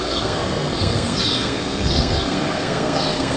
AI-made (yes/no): yes